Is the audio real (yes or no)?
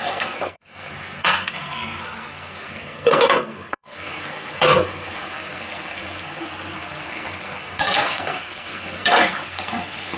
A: no